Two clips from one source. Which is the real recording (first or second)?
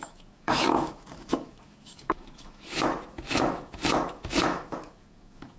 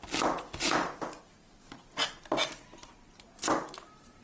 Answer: second